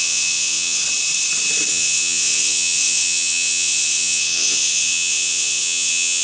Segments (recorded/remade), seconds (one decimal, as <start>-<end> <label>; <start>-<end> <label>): 0.0-0.8 remade; 0.8-1.7 recorded; 1.7-6.2 remade